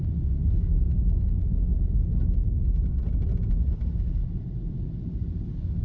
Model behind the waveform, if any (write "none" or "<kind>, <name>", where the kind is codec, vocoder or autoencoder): none